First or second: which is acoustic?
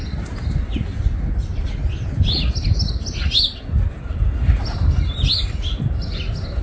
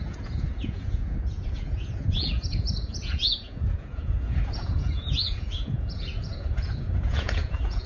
first